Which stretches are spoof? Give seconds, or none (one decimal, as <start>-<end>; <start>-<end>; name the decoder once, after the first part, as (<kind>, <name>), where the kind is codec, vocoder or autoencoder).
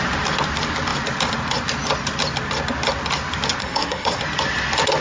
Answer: 3.6-4.2 (codec, SNAC)